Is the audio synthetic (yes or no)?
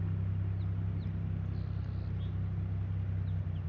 no